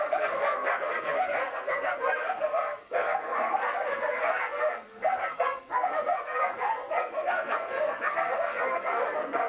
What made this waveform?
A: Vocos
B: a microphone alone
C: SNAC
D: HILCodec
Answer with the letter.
C